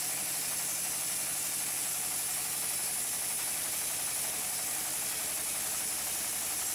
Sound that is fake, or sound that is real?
real